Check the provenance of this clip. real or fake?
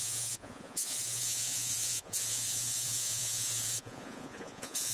fake